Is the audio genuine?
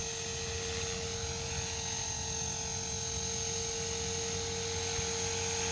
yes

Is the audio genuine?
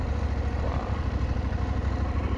no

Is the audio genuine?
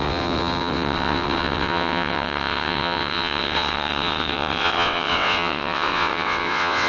no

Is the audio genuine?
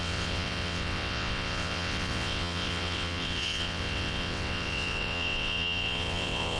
no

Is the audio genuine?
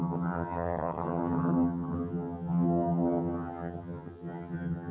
no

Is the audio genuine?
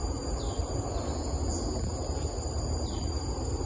yes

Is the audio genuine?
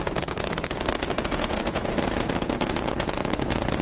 no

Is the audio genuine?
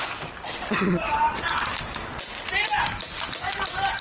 yes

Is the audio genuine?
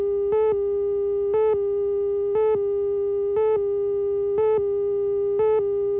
yes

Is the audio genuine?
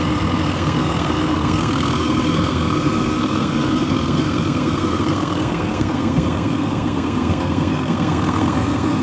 no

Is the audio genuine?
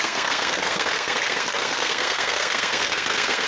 no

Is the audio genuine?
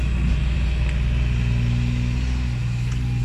yes